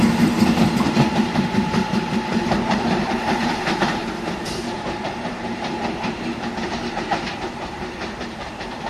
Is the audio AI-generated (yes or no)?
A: yes